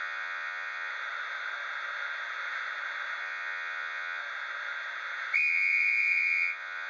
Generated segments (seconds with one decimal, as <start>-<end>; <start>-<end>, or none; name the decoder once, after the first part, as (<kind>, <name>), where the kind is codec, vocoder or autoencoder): 0.0-0.9 (vocoder, Vocos); 3.2-4.2; 5.5-6.9